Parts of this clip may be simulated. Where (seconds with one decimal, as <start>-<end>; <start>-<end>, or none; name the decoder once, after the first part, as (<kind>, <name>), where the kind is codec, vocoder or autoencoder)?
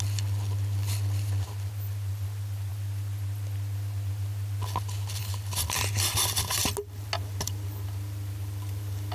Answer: none